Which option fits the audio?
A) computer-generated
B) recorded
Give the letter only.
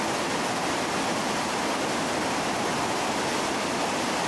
B